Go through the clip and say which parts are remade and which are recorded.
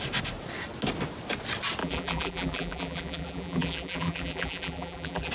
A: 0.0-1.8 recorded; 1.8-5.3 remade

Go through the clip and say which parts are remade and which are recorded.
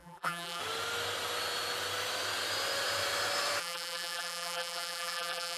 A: 0.0-0.6 remade; 0.6-3.6 recorded; 3.6-5.6 remade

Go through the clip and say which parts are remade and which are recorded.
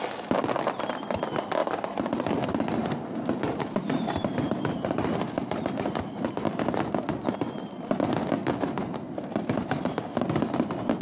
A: 0.0-1.6 recorded; 1.6-6.8 remade; 6.8-8.4 recorded; 8.4-10.2 remade; 10.2-11.0 recorded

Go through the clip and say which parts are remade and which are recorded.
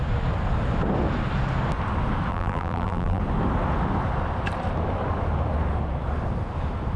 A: 0.0-2.3 recorded; 2.3-3.2 remade; 3.2-7.0 recorded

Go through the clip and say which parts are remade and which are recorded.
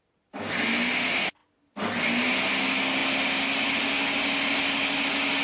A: 0.0-5.4 recorded